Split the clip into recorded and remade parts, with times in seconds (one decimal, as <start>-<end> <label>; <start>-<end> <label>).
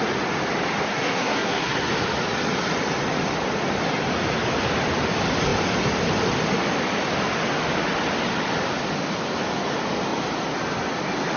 0.0-0.9 recorded; 0.9-1.9 remade; 1.9-11.4 recorded